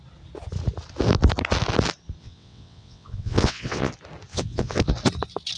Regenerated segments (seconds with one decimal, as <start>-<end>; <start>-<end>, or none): 2.2-3.9; 4.3-4.9